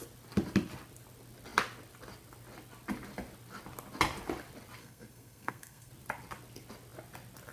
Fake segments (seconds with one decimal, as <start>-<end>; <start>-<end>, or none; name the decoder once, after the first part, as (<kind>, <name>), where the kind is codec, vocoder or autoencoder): 4.8-5.9 (codec, SNAC)